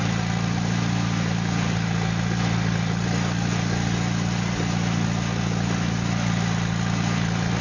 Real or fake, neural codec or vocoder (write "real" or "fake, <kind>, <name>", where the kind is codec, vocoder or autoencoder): real